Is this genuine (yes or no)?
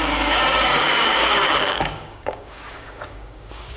no